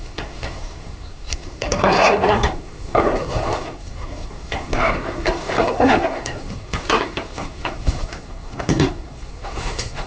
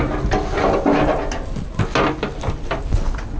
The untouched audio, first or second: second